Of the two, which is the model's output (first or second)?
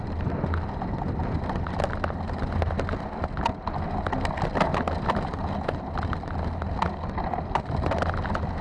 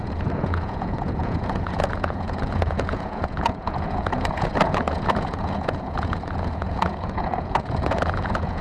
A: second